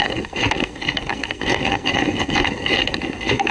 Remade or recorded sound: remade